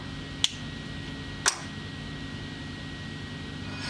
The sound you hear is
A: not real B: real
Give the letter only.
B